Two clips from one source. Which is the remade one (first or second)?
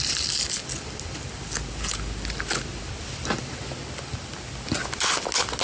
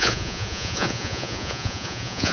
second